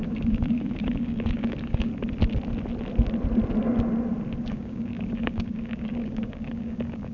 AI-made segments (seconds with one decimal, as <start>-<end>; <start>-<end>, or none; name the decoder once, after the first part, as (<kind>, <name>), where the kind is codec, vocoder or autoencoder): 0.0-1.9 (codec, DAC); 4.4-7.1